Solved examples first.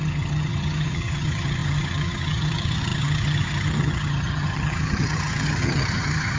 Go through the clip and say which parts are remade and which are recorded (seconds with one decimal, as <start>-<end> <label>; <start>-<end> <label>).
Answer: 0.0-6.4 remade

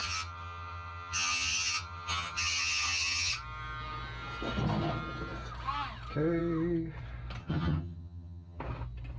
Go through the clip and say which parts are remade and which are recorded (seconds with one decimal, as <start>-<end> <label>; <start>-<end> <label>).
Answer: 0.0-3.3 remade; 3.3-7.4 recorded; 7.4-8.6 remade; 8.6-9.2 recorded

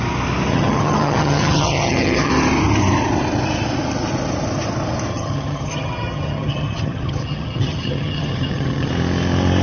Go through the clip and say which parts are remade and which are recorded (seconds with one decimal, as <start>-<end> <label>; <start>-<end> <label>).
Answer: 0.0-0.5 recorded; 0.5-2.3 remade; 2.3-5.1 recorded; 5.1-8.9 remade; 8.9-9.6 recorded

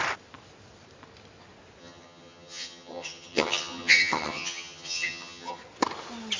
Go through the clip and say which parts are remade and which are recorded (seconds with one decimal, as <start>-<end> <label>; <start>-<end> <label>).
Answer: 0.0-1.8 recorded; 1.8-5.6 remade; 5.6-6.4 recorded

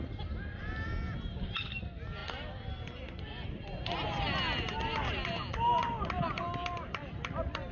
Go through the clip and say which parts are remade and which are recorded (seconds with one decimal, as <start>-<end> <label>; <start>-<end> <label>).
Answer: 0.0-7.7 recorded